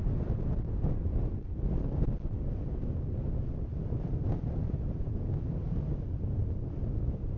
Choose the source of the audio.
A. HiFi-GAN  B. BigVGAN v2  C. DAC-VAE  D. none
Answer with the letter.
D